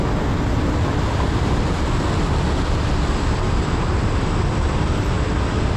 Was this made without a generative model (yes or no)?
yes